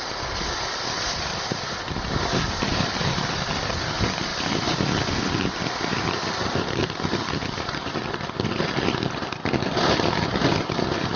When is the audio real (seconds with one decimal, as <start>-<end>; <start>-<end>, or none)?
0.0-11.2